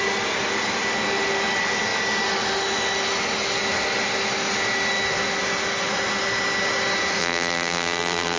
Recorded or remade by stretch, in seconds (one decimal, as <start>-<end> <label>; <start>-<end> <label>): 0.0-7.2 recorded; 7.2-8.4 remade